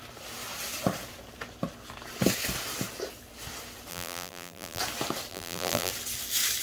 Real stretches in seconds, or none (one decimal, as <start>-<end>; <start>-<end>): 0.0-3.9; 4.8-5.3; 5.9-6.6